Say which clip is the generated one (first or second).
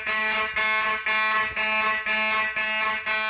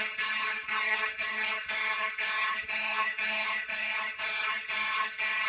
second